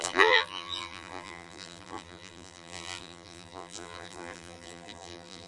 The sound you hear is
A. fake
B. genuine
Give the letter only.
A